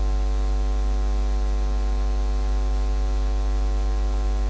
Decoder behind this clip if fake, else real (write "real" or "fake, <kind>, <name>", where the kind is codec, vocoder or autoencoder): real